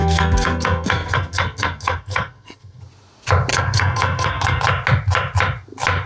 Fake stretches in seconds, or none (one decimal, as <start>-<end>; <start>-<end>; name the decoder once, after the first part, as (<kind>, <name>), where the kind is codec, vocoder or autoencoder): 0.0-2.8 (codec, SNAC); 3.5-4.6